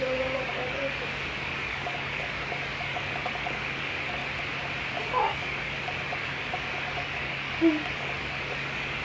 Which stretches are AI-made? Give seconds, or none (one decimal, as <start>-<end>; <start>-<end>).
0.0-4.2; 5.0-9.0